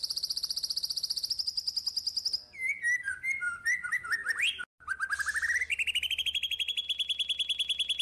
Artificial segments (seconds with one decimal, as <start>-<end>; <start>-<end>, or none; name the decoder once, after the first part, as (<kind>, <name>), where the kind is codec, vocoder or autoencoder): 0.0-1.7 (vocoder, BigVGAN v2)